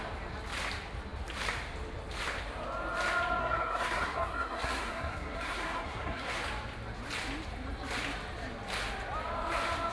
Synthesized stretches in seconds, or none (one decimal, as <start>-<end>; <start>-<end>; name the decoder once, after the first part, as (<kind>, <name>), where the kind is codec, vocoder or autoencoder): 3.4-6.4 (codec, SNAC)